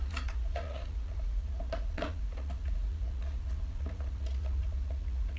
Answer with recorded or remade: remade